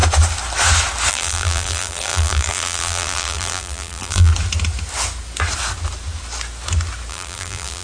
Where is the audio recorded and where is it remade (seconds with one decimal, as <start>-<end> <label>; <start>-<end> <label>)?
0.0-1.1 recorded; 1.1-4.3 remade; 4.3-7.1 recorded; 7.1-7.8 remade